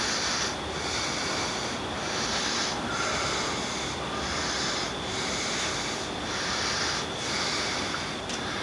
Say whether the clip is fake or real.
real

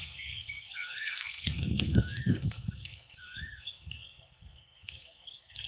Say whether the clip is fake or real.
fake